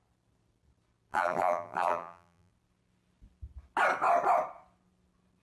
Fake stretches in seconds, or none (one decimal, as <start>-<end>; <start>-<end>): 1.1-2.5